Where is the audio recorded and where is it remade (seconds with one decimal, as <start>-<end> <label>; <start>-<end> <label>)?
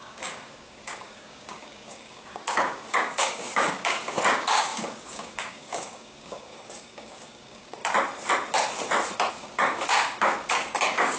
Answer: 0.0-7.8 remade; 7.8-9.3 recorded; 9.3-11.2 remade